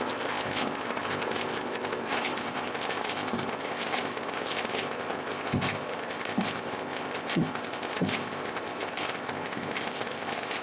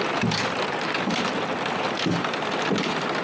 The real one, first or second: second